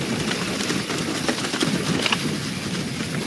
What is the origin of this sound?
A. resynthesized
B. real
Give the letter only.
B